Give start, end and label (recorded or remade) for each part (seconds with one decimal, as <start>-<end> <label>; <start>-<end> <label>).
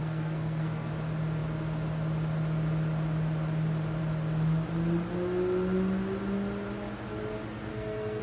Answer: 0.0-0.9 remade; 0.9-7.7 recorded; 7.7-8.2 remade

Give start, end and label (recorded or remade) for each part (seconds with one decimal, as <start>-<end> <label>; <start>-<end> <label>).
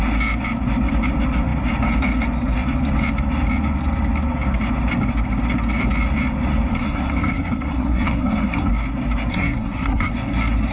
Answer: 0.0-6.7 recorded; 6.7-8.7 remade; 8.7-9.3 recorded; 9.3-10.1 remade; 10.1-10.7 recorded